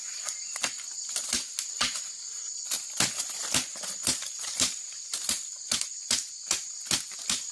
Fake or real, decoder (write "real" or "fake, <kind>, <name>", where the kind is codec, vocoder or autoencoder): real